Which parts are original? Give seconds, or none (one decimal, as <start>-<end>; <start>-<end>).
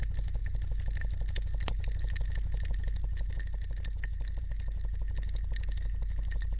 0.0-6.6